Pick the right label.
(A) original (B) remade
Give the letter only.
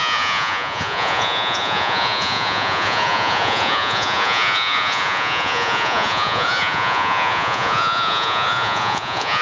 B